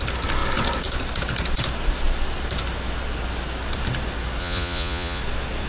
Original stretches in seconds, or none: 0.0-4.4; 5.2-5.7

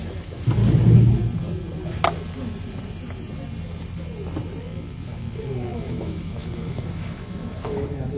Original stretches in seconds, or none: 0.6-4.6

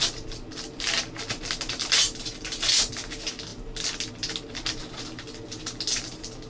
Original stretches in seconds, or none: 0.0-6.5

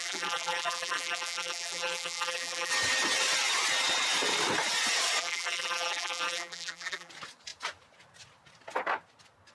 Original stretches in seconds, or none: 2.7-5.2; 7.1-9.5

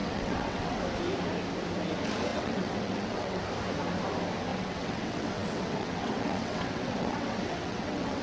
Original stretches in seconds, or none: 0.8-2.3; 3.4-4.5

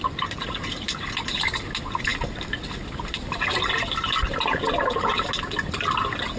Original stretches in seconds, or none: 0.0-6.4